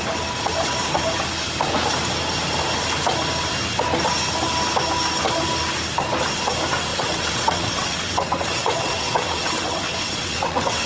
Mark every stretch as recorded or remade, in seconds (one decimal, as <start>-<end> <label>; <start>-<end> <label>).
0.0-6.9 recorded; 6.9-10.9 remade